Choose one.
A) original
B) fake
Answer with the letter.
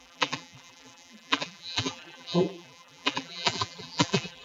B